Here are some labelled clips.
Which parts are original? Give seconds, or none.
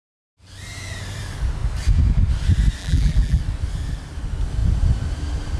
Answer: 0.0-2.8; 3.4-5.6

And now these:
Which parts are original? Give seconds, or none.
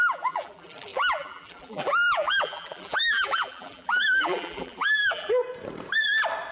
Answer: 5.4-6.5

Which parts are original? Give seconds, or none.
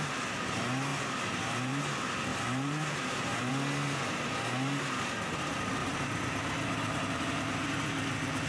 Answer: 0.0-0.9; 1.8-2.3; 3.5-5.8; 7.5-8.5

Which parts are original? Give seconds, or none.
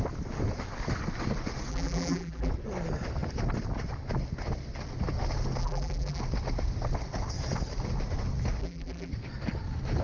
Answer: 0.0-1.7; 2.5-5.6; 6.2-8.6; 9.1-10.0